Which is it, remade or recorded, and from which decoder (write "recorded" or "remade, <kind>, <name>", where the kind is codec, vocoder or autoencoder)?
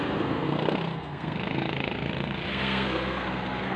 remade, codec, SNAC